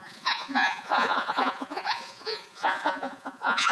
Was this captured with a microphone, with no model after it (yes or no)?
no